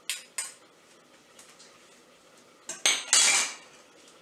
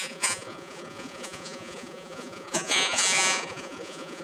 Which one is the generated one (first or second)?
second